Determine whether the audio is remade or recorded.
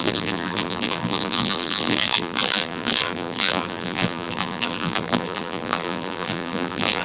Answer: remade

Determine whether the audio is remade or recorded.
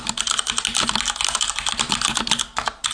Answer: recorded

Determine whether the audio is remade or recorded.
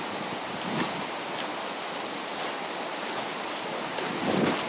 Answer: recorded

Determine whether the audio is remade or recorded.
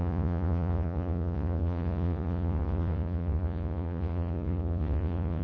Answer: remade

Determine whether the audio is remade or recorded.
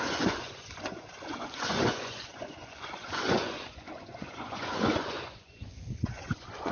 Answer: remade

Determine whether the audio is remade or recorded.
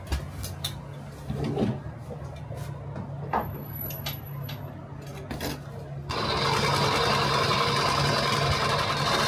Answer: recorded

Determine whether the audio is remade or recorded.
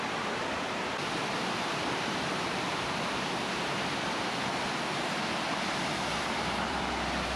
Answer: remade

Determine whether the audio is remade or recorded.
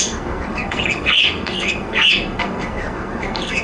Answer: remade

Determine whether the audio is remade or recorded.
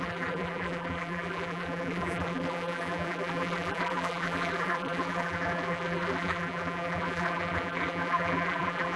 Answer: remade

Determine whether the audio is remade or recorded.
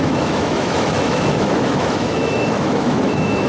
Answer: remade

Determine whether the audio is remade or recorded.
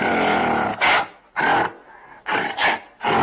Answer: recorded